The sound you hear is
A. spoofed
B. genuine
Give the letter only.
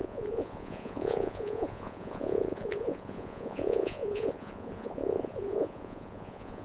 A